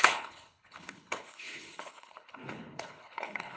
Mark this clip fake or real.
fake